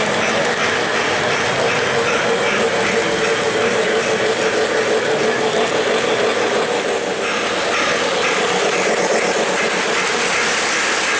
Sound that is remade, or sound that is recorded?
recorded